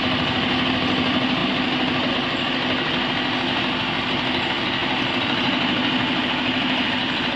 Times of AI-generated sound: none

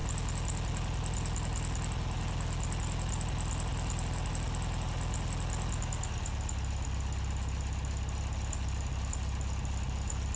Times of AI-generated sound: none

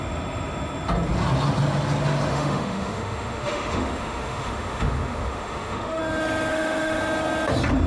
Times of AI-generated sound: 2.3-6.0; 6.5-7.0

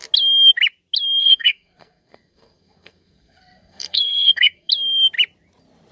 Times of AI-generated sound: 1.2-4.7

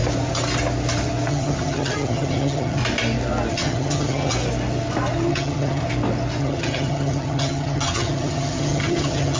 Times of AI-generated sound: 1.3-2.8; 3.5-4.3; 5.3-5.8; 6.4-9.4

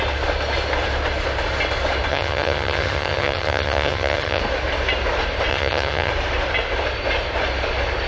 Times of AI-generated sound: 2.1-4.4; 5.5-6.1

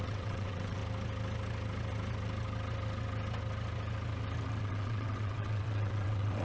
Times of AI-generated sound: 0.0-0.8; 4.6-6.4